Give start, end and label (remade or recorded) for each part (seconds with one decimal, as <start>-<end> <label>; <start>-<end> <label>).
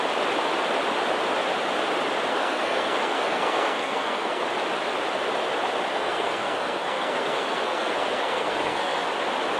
0.0-2.3 recorded; 2.3-4.4 remade; 4.4-5.9 recorded; 5.9-9.1 remade; 9.1-9.6 recorded